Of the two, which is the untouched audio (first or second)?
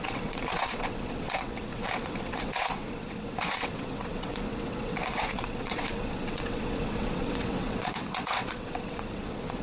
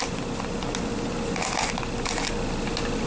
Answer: second